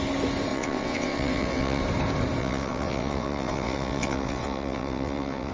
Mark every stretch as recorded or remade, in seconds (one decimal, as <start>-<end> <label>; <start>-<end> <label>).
0.0-0.5 recorded; 0.5-1.8 remade; 1.8-2.4 recorded; 2.4-5.5 remade